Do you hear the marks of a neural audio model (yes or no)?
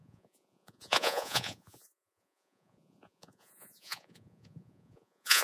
yes